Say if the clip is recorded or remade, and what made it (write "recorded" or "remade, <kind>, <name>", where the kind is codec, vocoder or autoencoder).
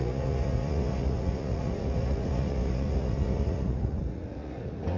remade, vocoder, Vocos